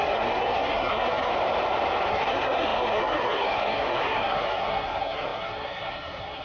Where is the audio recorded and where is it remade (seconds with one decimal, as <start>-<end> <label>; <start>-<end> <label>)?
0.0-1.3 remade; 1.3-2.1 recorded; 2.1-6.4 remade